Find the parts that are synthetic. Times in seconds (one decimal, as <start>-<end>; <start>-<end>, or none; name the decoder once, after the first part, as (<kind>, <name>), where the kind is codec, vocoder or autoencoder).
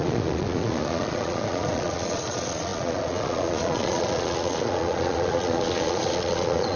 0.0-6.8 (vocoder, Vocos)